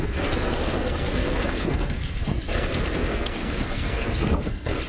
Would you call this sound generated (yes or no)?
yes